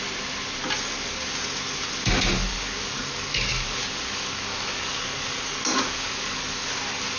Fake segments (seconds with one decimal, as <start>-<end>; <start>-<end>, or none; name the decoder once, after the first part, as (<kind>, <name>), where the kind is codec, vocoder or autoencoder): 2.4-6.7 (codec, DAC)